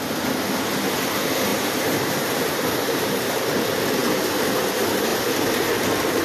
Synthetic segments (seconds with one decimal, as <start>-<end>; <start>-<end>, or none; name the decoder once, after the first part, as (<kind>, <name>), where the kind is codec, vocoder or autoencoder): 1.5-3.6 (vocoder, BigVGAN v2); 5.1-5.8

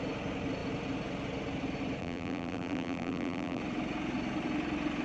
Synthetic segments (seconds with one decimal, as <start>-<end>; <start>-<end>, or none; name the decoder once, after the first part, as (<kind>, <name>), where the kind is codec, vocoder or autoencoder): 2.0-3.6 (vocoder, BigVGAN v2)